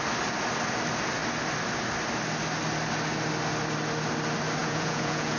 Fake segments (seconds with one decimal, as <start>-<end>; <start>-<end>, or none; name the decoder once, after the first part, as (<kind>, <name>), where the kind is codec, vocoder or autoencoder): 4.6-5.4 (vocoder, Vocos)